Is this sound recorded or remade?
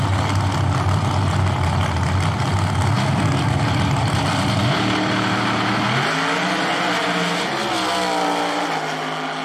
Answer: recorded